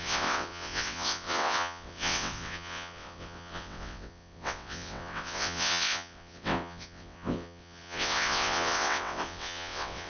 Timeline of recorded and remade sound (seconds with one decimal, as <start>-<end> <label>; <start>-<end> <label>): 0.0-10.1 remade